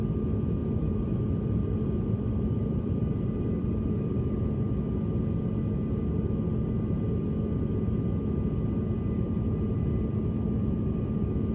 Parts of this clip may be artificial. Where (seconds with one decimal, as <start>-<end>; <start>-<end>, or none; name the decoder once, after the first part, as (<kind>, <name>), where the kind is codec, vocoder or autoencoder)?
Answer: 0.6-4.2 (vocoder, BigVGAN v2)